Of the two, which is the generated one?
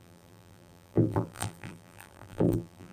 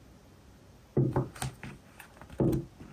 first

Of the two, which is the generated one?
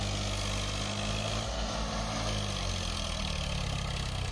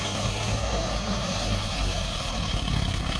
second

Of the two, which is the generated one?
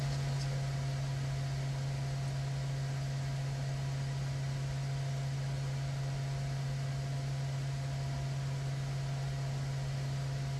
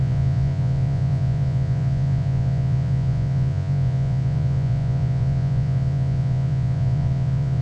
second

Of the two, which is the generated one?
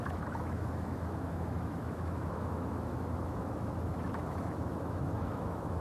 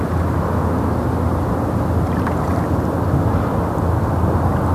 first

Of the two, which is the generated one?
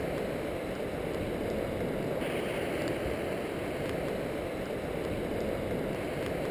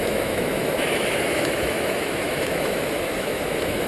second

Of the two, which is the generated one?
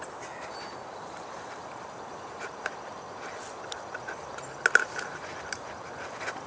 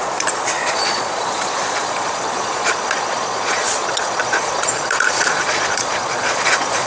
second